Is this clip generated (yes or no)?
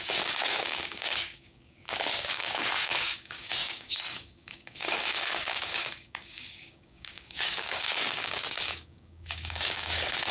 yes